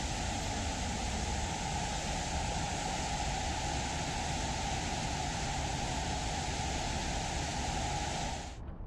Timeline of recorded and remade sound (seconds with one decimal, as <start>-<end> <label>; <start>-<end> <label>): 0.0-8.9 recorded